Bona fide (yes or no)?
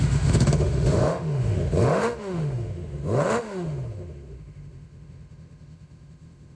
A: no